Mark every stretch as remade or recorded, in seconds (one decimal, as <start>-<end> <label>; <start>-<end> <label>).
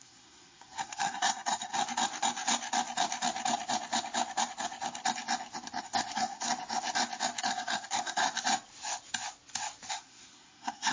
0.0-1.7 remade; 1.7-5.8 recorded; 5.8-6.5 remade; 6.5-7.4 recorded; 7.4-8.2 remade; 8.2-9.9 recorded; 9.9-10.9 remade